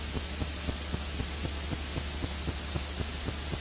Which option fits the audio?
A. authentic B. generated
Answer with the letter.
A